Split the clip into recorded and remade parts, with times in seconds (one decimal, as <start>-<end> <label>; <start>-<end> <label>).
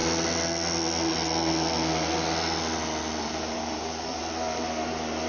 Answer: 0.0-3.2 recorded; 3.2-4.2 remade; 4.2-5.3 recorded